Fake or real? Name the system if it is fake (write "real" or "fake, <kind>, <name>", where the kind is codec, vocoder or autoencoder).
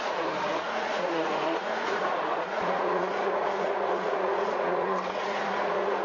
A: fake, vocoder, Vocos